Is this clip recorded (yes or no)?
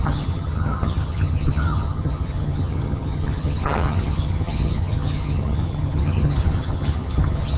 no